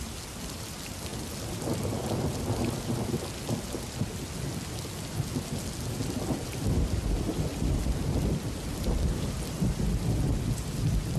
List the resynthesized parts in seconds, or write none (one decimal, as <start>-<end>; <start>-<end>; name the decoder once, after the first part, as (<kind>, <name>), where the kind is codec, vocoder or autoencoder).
none